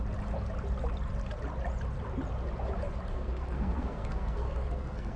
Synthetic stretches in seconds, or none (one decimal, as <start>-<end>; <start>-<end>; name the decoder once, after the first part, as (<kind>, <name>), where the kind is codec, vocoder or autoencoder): 3.1-5.2 (codec, SNAC)